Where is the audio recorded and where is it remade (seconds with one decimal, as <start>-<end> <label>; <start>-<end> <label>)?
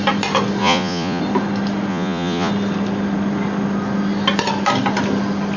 0.0-0.6 recorded; 0.6-1.2 remade; 1.2-1.9 recorded; 1.9-2.5 remade; 2.5-5.6 recorded